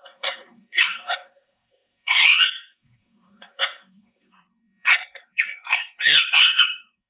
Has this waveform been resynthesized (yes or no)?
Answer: yes